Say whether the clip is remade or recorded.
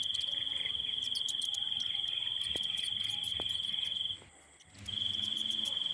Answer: recorded